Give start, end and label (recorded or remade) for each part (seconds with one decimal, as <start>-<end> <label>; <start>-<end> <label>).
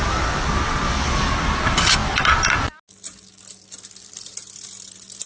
0.0-5.3 recorded